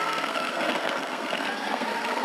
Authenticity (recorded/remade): remade